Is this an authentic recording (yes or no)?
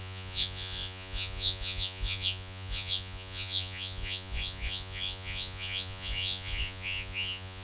no